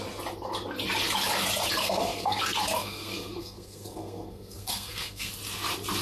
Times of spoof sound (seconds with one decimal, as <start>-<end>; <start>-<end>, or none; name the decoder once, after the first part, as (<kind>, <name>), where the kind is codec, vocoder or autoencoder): 1.8-2.4 (codec, SNAC); 2.8-5.3